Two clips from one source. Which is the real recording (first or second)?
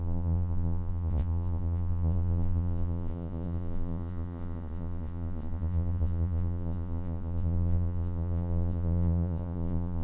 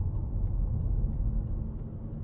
second